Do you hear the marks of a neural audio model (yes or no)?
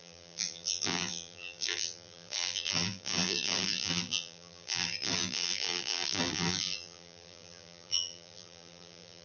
yes